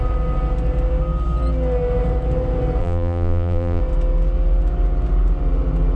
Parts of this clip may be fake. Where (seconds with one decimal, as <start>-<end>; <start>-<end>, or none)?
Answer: 2.8-3.8